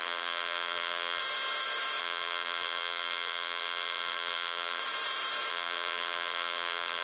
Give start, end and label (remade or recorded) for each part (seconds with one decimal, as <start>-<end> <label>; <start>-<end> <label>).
0.0-1.2 remade; 1.2-2.0 recorded; 2.0-4.8 remade; 4.8-5.5 recorded; 5.5-7.0 remade